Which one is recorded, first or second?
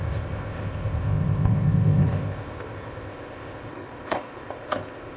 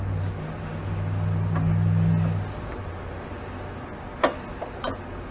second